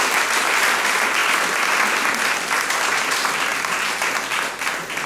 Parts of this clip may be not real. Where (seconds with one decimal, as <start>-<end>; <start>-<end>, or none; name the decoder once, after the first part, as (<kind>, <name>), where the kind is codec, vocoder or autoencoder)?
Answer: none